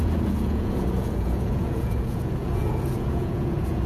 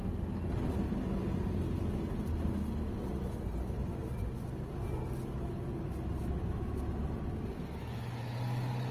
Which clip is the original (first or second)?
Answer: second